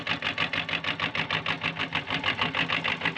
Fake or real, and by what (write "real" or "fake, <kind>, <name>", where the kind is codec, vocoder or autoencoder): real